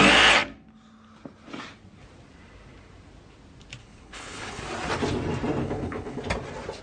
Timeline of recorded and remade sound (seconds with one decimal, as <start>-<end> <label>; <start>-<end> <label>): 0.0-3.8 recorded; 3.8-4.6 remade; 4.6-5.6 recorded; 5.6-6.2 remade; 6.2-6.8 recorded